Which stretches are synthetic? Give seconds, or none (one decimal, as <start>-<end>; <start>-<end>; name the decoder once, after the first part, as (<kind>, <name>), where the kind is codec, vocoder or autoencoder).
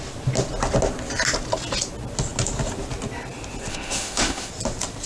3.7-4.5 (autoencoder, DAC-VAE)